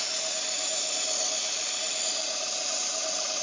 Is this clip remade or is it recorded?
recorded